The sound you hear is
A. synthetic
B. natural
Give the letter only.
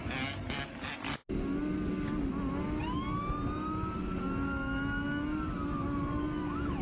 B